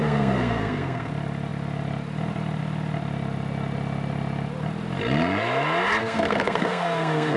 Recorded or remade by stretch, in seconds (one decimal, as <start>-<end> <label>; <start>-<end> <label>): 0.0-1.1 remade; 1.1-6.0 recorded; 6.0-7.4 remade